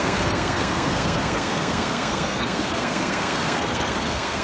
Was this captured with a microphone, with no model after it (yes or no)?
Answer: no